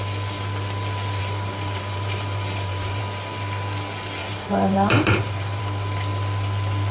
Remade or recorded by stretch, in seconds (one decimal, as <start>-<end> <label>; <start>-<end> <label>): 0.0-1.2 recorded; 1.2-3.0 remade; 3.0-4.2 recorded; 4.2-5.6 remade; 5.6-6.9 recorded